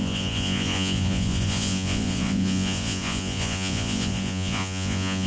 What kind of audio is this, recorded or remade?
remade